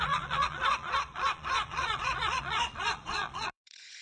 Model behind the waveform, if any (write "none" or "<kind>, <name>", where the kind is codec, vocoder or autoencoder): vocoder, Vocos